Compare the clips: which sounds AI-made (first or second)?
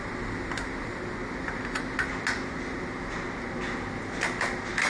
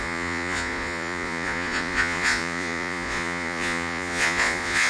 second